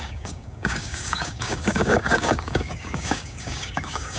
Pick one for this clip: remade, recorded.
remade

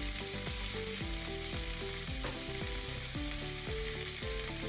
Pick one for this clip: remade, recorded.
recorded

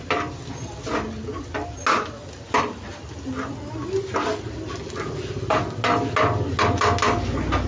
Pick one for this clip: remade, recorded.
recorded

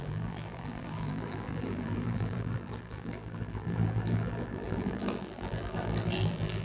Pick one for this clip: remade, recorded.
remade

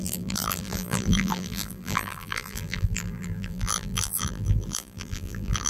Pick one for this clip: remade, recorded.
remade